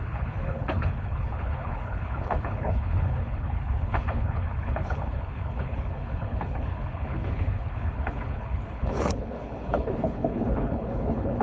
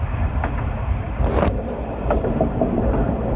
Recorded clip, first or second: second